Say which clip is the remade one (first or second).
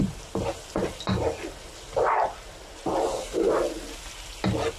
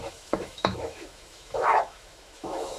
second